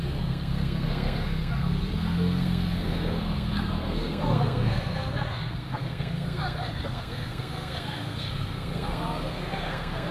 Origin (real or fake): fake